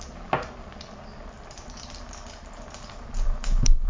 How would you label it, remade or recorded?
recorded